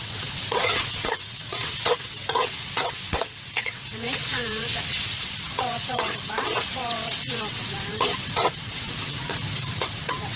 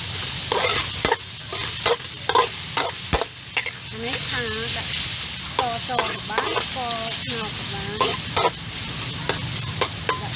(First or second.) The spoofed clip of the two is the first